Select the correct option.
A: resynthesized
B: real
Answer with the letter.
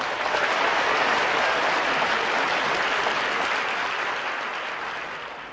B